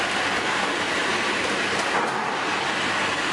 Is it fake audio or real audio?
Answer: real